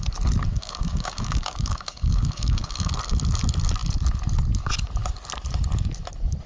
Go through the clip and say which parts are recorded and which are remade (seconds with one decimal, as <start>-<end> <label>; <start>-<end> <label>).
0.0-0.5 recorded; 0.5-2.9 remade; 2.9-6.5 recorded